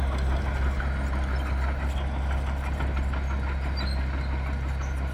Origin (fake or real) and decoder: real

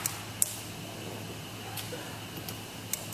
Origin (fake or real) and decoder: real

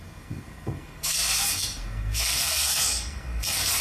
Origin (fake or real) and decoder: fake, codec, SNAC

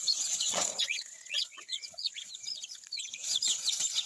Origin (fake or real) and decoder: fake, vocoder, Vocos